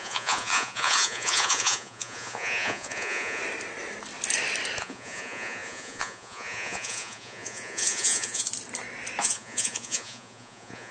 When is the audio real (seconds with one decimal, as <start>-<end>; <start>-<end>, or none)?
3.4-4.8; 8.5-9.2

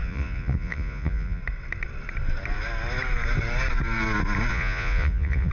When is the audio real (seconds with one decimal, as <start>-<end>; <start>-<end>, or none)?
1.4-4.5

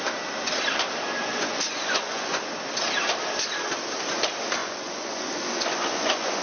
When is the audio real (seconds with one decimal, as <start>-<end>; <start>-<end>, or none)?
0.0-1.3; 2.4-4.6

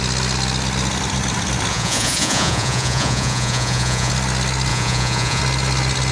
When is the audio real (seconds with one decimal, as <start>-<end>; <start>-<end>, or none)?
0.0-1.7; 4.1-4.7; 5.4-6.1

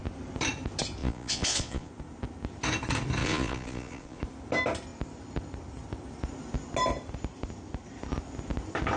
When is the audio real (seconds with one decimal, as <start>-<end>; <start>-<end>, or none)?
0.0-1.0; 1.9-3.2; 4.2-9.0

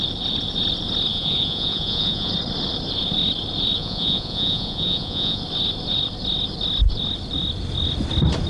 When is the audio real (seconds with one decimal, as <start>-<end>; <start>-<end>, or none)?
0.0-1.1; 2.3-3.8; 5.4-8.5

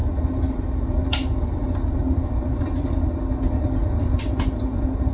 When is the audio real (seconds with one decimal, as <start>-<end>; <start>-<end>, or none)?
0.0-5.1